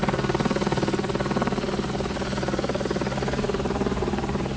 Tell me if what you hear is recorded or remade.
recorded